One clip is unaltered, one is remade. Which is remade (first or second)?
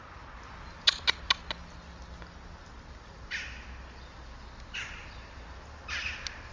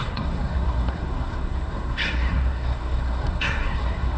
second